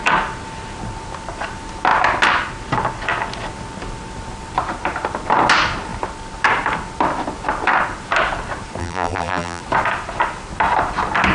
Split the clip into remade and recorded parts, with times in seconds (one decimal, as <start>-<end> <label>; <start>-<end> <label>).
0.0-8.8 recorded; 8.8-9.6 remade; 9.6-11.3 recorded